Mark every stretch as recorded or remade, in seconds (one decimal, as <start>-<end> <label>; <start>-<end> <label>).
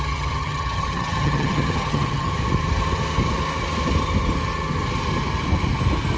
0.0-2.3 remade; 2.3-6.2 recorded